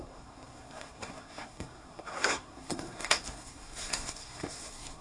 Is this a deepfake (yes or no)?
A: yes